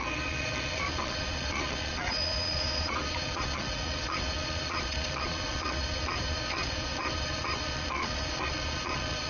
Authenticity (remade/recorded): remade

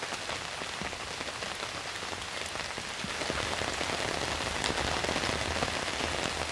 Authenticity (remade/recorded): recorded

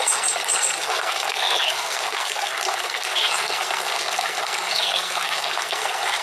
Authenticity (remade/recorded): remade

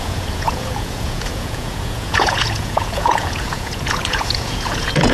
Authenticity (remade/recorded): remade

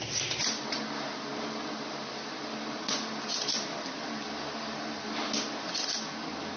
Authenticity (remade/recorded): recorded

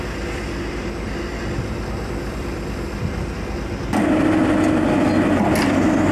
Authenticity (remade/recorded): recorded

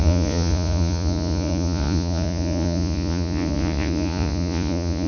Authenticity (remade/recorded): remade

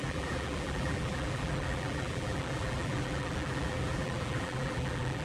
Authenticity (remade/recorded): remade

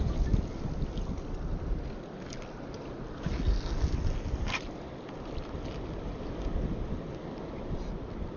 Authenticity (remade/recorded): recorded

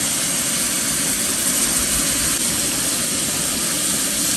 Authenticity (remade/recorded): recorded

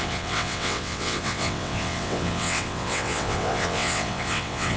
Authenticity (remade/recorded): remade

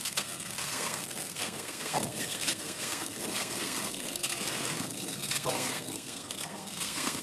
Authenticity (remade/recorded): remade